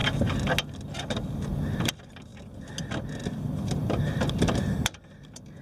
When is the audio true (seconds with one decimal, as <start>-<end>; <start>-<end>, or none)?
0.0-3.8

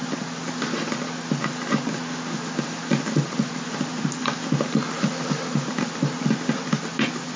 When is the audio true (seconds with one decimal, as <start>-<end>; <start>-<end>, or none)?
0.0-7.4

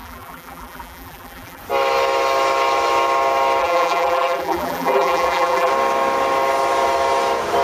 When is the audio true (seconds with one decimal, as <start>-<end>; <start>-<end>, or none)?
1.6-3.6; 5.7-7.6

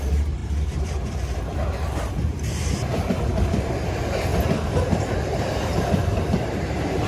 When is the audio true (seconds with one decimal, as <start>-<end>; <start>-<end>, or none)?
4.3-5.2

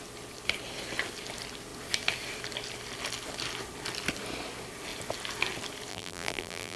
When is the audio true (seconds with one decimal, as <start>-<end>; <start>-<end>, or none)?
0.0-5.9

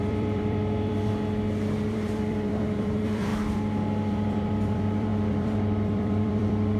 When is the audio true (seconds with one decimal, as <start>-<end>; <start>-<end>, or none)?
0.9-1.9; 3.3-4.1

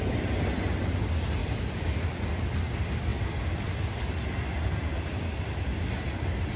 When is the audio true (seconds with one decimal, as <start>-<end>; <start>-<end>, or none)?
0.0-1.4; 2.4-6.6